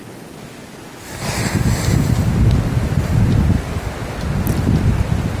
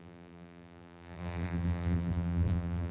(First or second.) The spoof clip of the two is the second